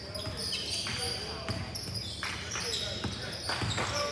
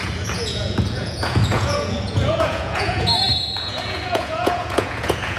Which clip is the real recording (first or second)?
first